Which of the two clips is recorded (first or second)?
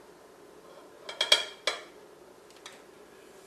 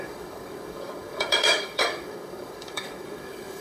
first